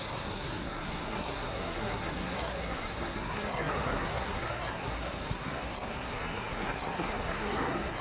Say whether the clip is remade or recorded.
remade